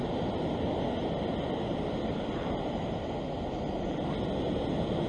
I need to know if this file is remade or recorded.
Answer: recorded